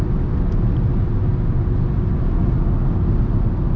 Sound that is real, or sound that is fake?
real